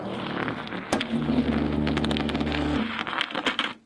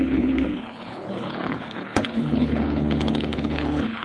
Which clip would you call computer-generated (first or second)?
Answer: second